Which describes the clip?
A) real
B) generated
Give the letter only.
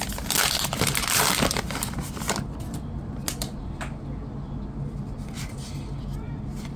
A